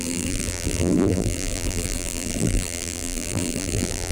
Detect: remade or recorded remade